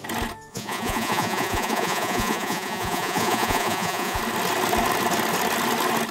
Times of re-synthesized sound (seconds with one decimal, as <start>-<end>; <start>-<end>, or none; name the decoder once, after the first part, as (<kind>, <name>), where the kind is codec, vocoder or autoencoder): 0.5-4.2 (vocoder, Vocos)